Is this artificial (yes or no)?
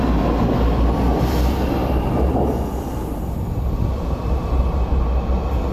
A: no